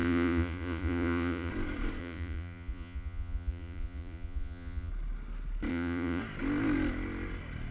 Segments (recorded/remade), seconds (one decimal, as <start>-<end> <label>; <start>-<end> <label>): 0.0-1.5 remade; 1.5-2.0 recorded; 2.0-4.9 remade; 4.9-5.7 recorded; 5.7-6.2 remade; 6.2-7.7 recorded